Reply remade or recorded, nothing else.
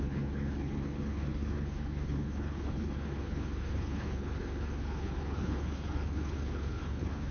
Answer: remade